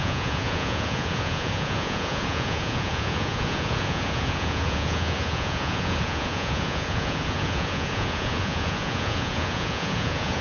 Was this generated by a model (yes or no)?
yes